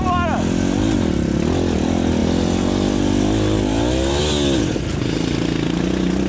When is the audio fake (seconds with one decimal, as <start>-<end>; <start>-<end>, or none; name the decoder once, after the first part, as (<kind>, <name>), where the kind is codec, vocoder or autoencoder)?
none